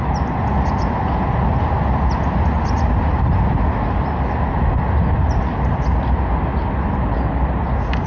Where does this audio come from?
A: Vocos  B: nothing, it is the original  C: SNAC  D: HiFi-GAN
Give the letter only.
B